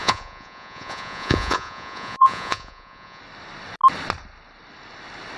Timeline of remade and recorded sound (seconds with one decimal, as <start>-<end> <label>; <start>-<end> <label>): 0.0-3.2 remade; 3.2-5.4 recorded